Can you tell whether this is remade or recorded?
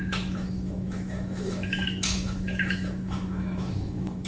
remade